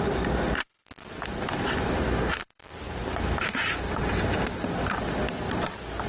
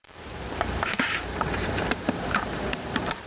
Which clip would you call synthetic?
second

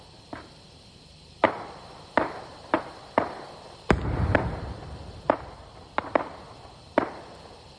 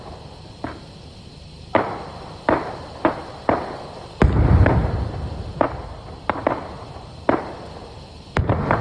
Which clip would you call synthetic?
first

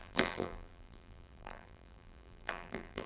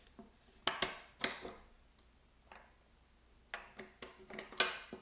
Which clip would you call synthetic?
first